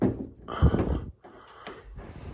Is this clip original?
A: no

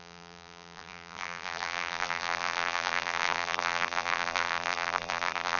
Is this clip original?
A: no